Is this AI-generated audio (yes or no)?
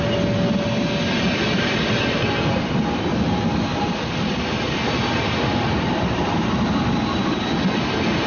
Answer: no